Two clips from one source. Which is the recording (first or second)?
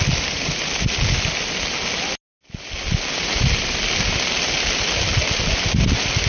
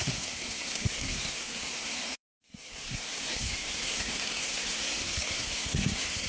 first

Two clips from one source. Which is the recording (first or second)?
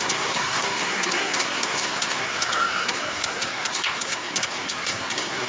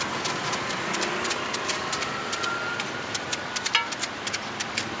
second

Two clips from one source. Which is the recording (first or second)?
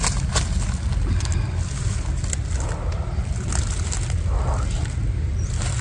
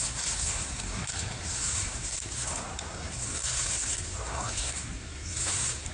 first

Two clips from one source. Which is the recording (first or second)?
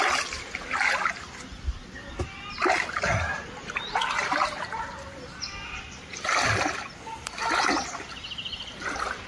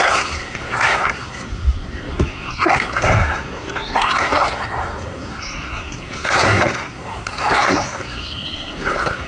first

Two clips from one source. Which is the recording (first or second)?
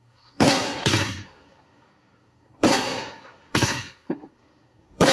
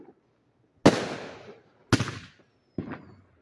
second